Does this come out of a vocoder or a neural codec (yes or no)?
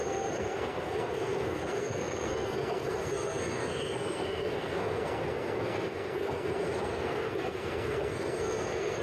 yes